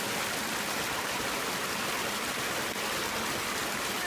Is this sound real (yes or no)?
yes